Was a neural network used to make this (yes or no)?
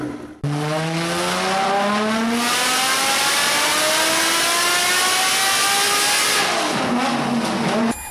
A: no